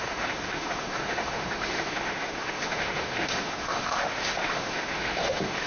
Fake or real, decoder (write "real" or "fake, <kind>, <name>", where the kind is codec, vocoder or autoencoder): fake, autoencoder, DAC-VAE